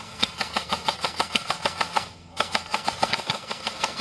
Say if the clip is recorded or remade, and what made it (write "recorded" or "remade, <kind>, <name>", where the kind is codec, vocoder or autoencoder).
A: remade, codec, SNAC